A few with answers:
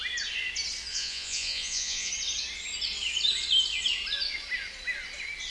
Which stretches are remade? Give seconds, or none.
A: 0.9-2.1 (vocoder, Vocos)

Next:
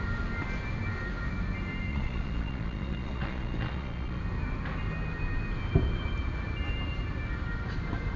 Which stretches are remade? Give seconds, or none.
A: 1.9-4.2 (vocoder, Vocos)

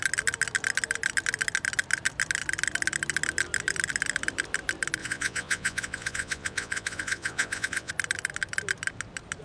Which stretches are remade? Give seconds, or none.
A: 5.0-7.9 (vocoder, Vocos)

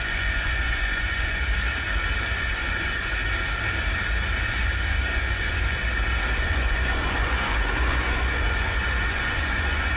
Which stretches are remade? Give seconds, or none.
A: 0.0-1.5 (vocoder, Vocos); 2.2-3.2; 4.5-5.8; 6.4-10.0

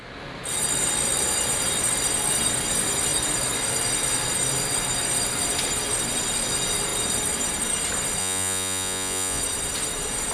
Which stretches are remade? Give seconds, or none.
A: 8.2-9.4 (vocoder, Vocos)

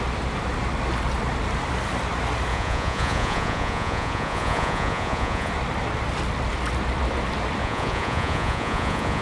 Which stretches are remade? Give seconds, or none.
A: 2.5-5.5 (vocoder, Vocos); 7.6-9.2

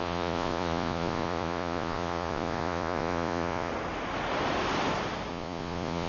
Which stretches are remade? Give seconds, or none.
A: 0.0-3.7 (vocoder, Vocos); 5.3-6.1

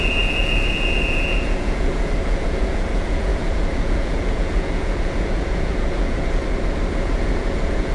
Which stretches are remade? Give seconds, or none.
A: 0.0-6.4 (vocoder, Vocos); 6.9-7.9